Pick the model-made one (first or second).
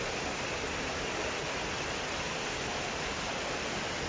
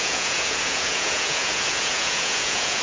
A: second